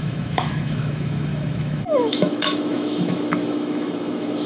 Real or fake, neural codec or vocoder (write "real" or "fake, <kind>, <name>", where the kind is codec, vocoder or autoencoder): fake, autoencoder, DAC-VAE